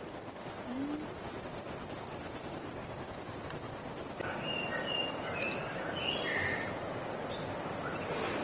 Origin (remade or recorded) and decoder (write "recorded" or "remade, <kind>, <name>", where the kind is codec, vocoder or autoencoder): recorded